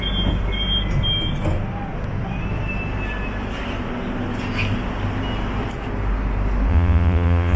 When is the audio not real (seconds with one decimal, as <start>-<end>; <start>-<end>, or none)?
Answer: 6.7-7.6